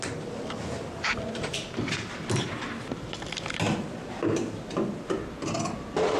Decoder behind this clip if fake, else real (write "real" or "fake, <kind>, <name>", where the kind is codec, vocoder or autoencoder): real